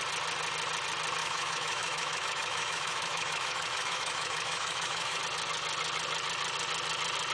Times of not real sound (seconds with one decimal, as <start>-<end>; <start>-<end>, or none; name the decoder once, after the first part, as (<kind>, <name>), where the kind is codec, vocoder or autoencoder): 1.2-5.2 (autoencoder, DAC-VAE)